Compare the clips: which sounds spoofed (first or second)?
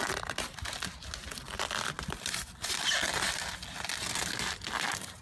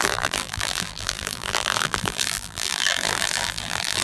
second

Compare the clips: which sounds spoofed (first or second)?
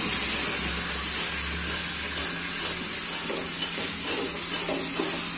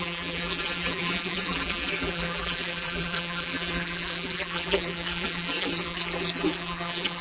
second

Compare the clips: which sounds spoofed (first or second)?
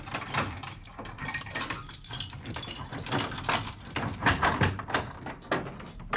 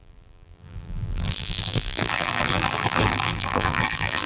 second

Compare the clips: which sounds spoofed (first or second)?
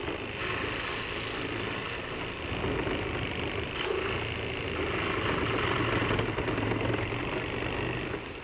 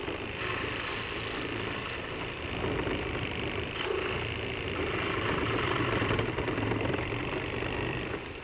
second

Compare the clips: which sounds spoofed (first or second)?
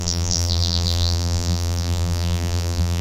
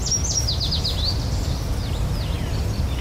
first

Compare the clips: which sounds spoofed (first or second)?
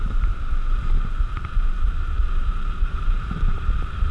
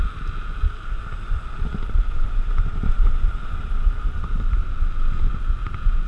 first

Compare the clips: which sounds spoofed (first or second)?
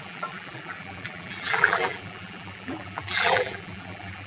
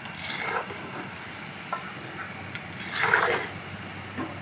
first